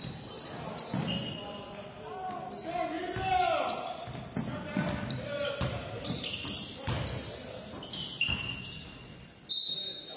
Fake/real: real